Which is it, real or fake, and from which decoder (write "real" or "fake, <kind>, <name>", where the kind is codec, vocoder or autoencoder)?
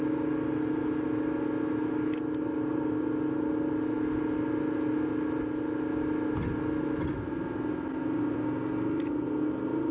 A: real